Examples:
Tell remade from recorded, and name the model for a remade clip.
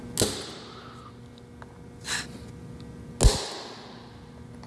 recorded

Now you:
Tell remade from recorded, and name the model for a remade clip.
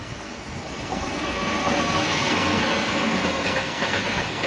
remade, codec, SNAC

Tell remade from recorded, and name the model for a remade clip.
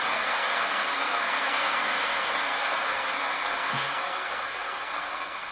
remade, codec, SNAC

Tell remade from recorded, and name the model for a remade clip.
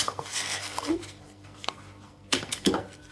remade, codec, SNAC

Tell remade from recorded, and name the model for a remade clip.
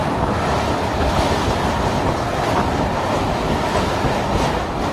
recorded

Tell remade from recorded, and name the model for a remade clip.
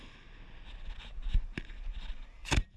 recorded